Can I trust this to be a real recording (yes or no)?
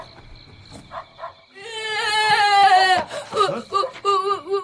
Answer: yes